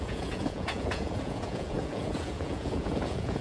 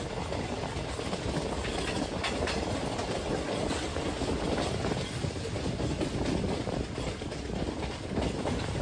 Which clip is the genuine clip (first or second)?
second